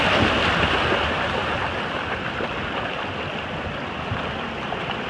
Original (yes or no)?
yes